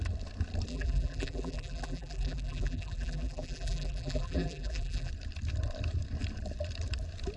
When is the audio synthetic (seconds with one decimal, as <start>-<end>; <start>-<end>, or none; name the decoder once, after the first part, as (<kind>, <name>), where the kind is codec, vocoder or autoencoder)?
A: 0.7-5.1 (vocoder, BigVGAN v2)